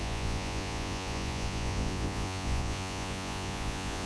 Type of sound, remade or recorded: remade